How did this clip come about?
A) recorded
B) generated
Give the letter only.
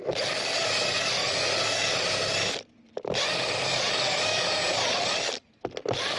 A